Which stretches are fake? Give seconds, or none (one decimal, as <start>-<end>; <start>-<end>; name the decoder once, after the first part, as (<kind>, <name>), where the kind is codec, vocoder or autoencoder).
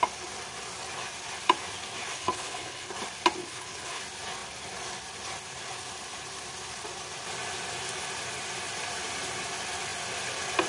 2.1-2.9 (codec, HILCodec); 3.4-4.0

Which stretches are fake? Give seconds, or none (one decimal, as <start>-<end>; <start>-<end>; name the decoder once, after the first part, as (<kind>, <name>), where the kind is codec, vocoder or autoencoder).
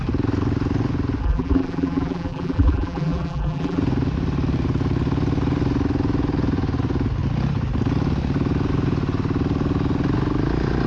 1.2-3.8 (vocoder, BigVGAN v2)